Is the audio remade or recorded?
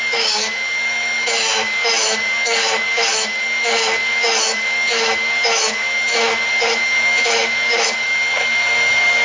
remade